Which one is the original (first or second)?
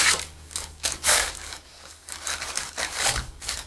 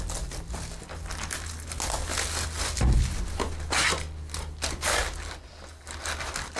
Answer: second